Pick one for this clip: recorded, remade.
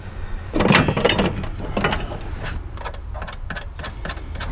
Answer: recorded